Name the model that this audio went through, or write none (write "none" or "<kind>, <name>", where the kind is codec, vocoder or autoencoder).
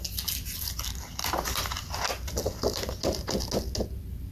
none